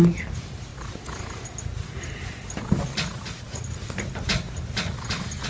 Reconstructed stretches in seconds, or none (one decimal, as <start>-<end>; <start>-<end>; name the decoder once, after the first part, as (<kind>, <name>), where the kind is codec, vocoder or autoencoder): none

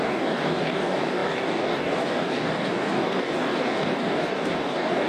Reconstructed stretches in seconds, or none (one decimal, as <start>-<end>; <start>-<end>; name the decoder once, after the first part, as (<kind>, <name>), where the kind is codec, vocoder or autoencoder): 0.0-5.1 (codec, DAC)